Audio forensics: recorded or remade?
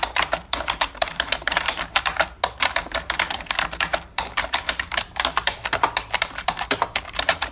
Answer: remade